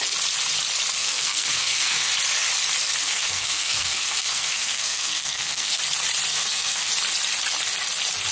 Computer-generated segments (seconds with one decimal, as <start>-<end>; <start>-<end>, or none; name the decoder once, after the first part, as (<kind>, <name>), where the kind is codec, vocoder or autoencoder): 1.0-2.1 (codec, SNAC); 3.0-5.8; 6.3-6.9